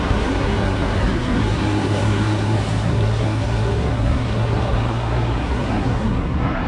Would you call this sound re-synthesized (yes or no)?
yes